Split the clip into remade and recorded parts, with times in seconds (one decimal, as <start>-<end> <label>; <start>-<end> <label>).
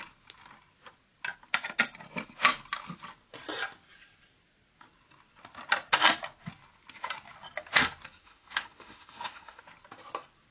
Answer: 0.0-8.2 recorded; 8.2-9.6 remade; 9.6-10.5 recorded